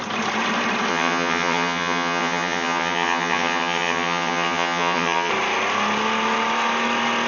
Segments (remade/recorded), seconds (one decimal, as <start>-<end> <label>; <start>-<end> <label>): 0.0-0.9 recorded; 0.9-5.3 remade; 5.3-7.3 recorded